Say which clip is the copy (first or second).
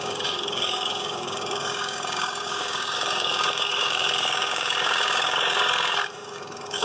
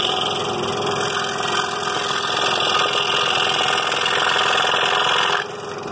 first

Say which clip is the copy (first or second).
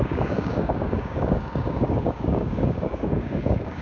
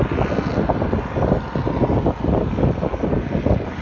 first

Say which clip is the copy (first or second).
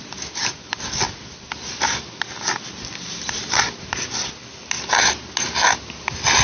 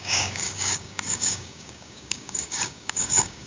second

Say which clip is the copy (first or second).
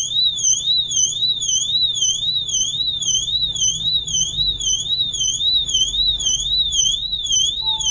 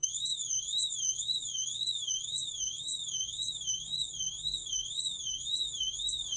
second